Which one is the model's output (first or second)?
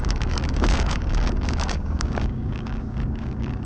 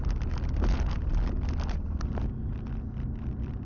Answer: first